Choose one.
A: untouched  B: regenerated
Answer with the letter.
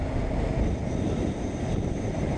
A